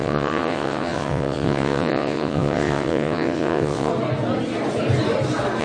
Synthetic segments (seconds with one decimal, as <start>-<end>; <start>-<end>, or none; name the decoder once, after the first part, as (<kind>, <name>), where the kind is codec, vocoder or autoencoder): 0.0-3.9 (vocoder, WaveNeXt)